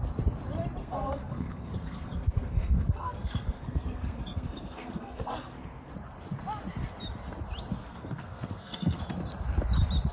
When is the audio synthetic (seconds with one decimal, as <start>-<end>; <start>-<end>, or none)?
0.8-5.9; 7.8-9.0